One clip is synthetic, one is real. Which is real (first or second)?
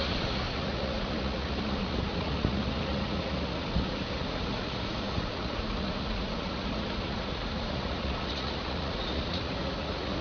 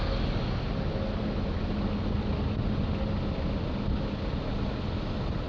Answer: second